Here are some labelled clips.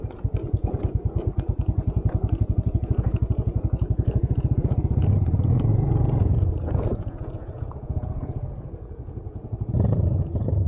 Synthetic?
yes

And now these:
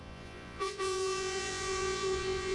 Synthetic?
yes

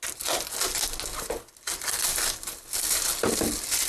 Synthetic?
no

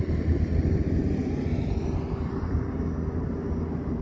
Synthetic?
no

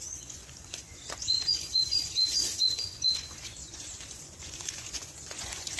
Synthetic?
yes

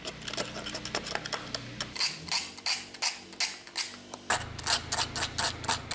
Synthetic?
no